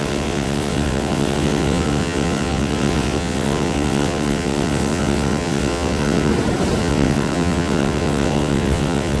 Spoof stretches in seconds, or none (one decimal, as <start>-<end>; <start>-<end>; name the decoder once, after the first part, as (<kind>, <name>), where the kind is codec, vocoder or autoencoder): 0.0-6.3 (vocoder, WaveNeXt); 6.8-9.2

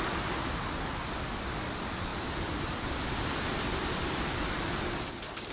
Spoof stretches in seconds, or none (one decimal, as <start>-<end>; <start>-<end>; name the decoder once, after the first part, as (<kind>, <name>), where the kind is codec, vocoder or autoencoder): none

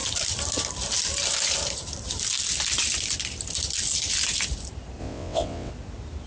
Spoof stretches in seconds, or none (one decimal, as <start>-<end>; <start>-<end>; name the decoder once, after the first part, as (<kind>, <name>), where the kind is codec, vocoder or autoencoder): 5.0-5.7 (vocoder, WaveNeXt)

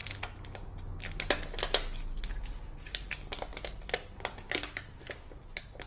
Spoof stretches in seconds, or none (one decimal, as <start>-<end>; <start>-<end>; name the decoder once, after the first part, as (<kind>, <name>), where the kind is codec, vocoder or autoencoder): none

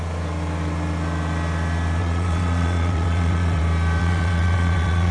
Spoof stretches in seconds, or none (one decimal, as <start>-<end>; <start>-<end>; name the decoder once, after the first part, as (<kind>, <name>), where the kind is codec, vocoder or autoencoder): 2.0-3.6 (vocoder, WaveNeXt); 4.0-5.1